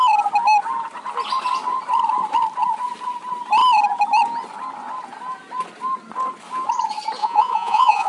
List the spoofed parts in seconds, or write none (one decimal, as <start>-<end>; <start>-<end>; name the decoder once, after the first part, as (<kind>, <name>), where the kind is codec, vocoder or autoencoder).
7.2-8.1 (vocoder, Vocos)